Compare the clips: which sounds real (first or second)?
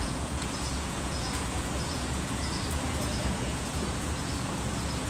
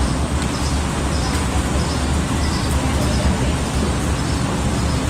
second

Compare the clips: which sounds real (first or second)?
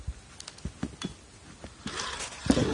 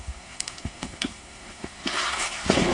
first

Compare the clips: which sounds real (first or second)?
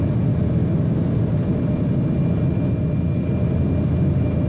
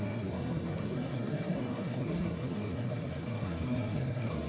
first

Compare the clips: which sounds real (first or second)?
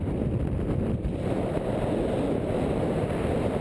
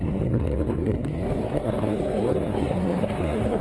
first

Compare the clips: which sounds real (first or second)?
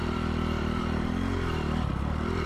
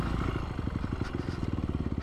second